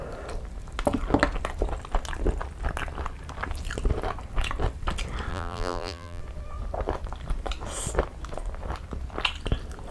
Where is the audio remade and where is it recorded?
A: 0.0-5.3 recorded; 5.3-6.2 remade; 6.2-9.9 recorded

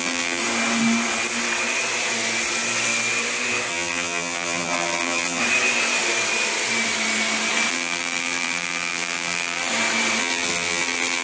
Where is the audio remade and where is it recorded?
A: 0.0-0.4 remade; 0.4-3.7 recorded; 3.7-5.4 remade; 5.4-7.7 recorded; 7.7-9.7 remade; 9.7-10.2 recorded; 10.2-11.2 remade

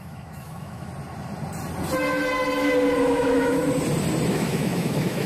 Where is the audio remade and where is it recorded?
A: 0.0-0.9 remade; 0.9-3.0 recorded; 3.0-3.6 remade; 3.6-4.3 recorded; 4.3-5.3 remade